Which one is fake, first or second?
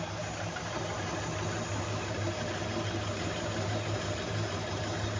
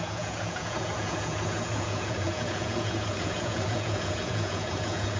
second